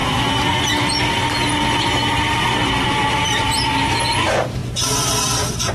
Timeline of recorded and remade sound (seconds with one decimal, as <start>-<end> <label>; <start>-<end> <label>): 0.0-5.7 recorded